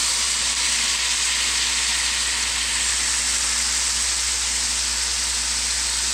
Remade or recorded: recorded